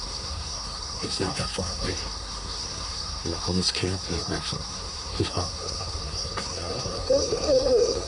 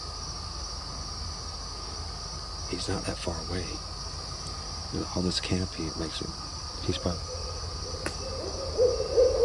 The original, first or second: second